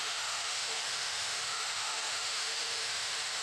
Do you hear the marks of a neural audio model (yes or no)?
yes